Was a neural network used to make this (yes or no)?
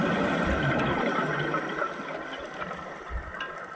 no